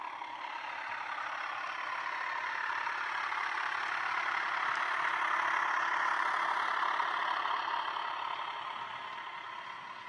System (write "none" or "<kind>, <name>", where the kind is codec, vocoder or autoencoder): none